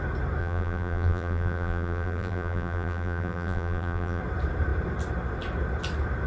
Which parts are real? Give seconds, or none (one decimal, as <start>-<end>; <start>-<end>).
0.0-0.4; 4.2-6.3